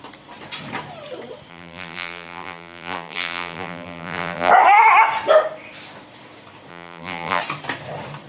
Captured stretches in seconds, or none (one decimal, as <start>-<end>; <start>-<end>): 0.0-1.5; 4.5-6.7; 7.4-8.3